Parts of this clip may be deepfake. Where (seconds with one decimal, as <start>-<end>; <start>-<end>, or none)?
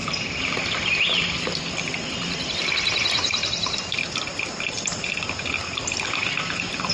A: 0.0-1.8